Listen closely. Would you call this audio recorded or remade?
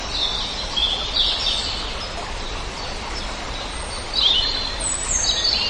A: recorded